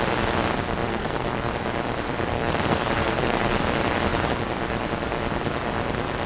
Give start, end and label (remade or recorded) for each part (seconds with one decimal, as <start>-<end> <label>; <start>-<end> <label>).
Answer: 0.0-0.9 recorded; 0.9-1.5 remade; 1.5-2.3 recorded; 2.3-3.6 remade; 3.6-6.3 recorded